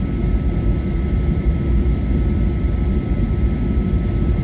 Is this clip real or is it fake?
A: real